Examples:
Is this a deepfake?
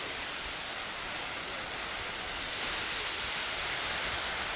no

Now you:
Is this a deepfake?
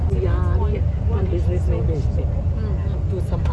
no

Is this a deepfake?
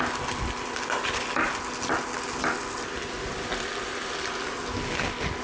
no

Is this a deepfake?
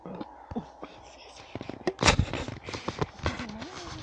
no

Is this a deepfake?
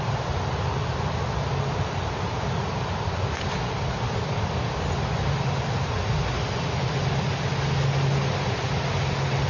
no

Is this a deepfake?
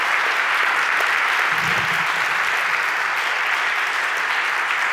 no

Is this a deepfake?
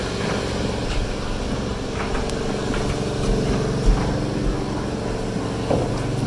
no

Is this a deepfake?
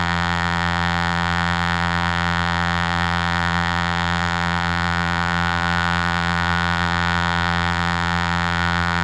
yes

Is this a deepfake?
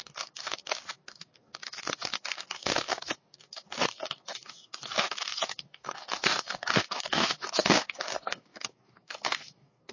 yes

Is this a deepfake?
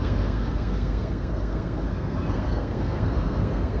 yes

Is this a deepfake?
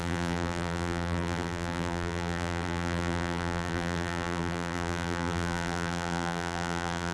yes